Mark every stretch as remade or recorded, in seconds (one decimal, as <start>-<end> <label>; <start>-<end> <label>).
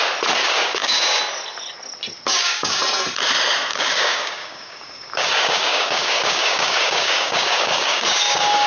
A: 0.0-0.4 recorded; 0.4-1.2 remade; 1.2-2.3 recorded; 2.3-2.8 remade; 2.8-3.7 recorded; 3.7-8.7 remade